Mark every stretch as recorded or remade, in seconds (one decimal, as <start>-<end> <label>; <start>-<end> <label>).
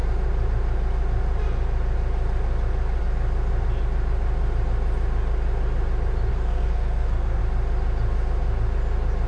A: 0.0-6.3 recorded; 6.3-7.4 remade; 7.4-9.3 recorded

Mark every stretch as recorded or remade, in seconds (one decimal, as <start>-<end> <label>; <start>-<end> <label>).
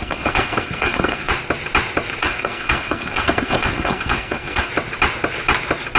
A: 0.0-1.3 remade; 1.3-2.2 recorded; 2.2-4.7 remade; 4.7-6.0 recorded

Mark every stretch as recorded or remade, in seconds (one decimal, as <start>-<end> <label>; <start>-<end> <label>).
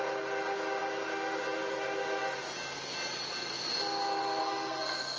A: 0.0-4.4 recorded; 4.4-5.2 remade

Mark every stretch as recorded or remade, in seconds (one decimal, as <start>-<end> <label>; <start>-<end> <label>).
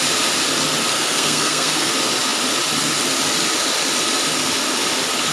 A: 0.0-0.9 recorded; 0.9-1.9 remade; 1.9-5.3 recorded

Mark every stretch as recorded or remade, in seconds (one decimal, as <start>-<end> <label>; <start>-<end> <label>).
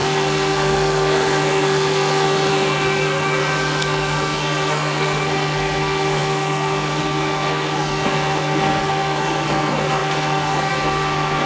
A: 0.0-11.5 remade